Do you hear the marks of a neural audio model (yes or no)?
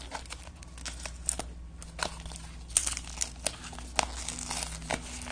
no